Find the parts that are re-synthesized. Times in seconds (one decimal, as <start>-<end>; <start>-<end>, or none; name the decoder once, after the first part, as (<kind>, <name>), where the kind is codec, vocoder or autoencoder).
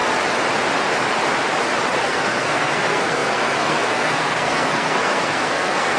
2.0-6.0 (codec, SNAC)